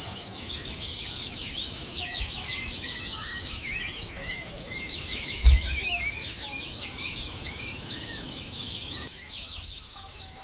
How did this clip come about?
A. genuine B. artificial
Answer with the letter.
B